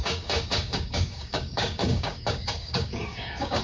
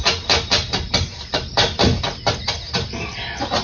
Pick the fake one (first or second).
first